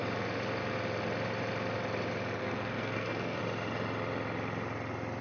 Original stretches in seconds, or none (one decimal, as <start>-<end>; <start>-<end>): 0.0-2.4; 3.4-5.2